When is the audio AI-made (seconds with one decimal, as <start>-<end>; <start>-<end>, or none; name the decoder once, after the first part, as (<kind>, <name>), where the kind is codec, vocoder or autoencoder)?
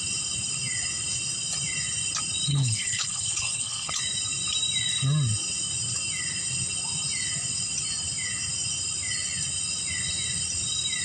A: 2.5-3.9 (codec, HILCodec)